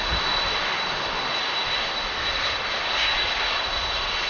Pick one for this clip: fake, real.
real